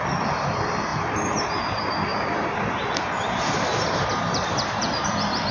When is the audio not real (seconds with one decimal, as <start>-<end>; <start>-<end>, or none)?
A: 0.9-1.6; 2.1-5.5